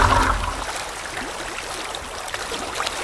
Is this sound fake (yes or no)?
no